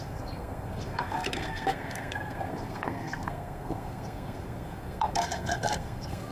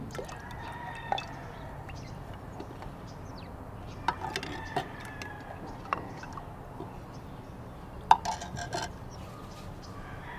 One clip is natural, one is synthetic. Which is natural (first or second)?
second